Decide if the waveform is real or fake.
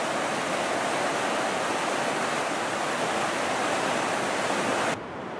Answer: real